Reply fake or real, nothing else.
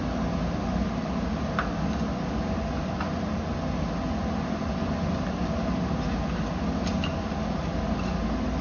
real